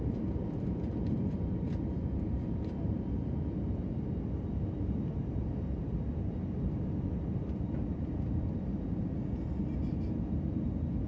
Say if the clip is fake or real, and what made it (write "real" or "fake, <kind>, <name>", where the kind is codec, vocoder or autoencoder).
fake, vocoder, BigVGAN v2